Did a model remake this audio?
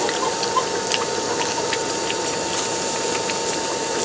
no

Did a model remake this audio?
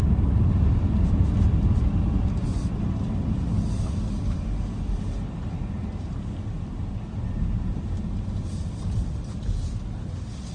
no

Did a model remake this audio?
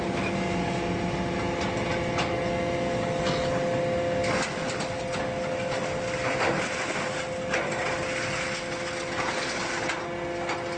no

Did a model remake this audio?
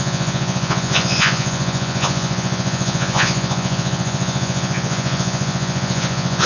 yes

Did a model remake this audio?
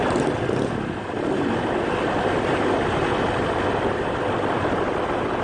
no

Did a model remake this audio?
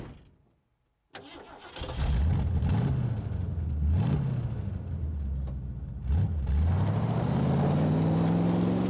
no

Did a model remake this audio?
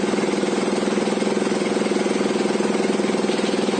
no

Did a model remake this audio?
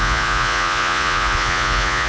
yes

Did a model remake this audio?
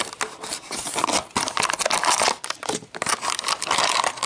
no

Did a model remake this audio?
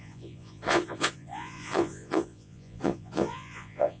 yes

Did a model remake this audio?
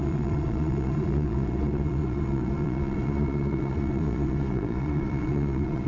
yes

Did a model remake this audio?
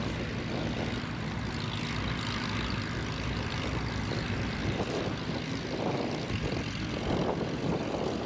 no